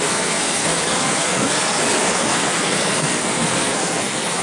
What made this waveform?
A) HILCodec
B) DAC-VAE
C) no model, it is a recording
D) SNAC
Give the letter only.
D